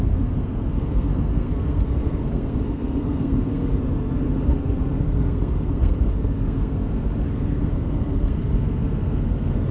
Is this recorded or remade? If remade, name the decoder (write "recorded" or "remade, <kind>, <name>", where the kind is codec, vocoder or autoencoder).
remade, codec, SNAC